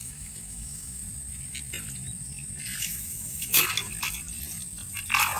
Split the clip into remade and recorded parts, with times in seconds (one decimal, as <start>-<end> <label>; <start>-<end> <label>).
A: 0.0-1.0 remade; 1.0-2.8 recorded; 2.8-3.6 remade; 3.6-5.4 recorded